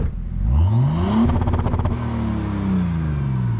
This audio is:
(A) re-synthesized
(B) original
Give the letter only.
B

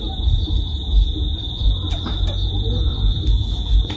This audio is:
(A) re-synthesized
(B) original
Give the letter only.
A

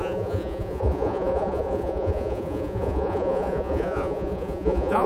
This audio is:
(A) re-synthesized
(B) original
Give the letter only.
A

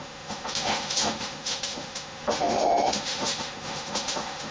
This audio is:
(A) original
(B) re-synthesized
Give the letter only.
B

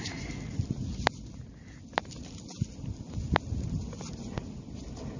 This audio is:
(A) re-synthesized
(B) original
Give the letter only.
B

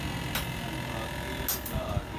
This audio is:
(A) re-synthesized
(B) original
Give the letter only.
B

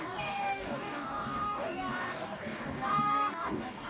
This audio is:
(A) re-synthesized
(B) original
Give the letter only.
A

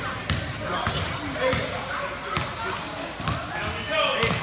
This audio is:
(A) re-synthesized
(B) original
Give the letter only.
B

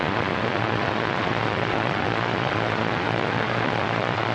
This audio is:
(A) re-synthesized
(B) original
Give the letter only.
A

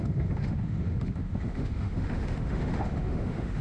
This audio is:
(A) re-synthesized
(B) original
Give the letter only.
A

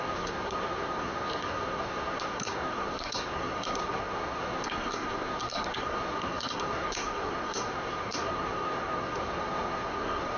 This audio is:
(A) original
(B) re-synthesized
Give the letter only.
B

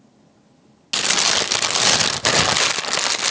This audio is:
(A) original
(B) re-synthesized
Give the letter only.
A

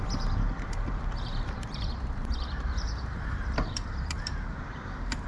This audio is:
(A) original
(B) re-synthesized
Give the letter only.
B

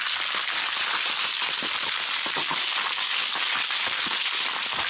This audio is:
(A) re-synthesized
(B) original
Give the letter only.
B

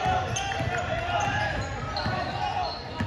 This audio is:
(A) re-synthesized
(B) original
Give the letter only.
B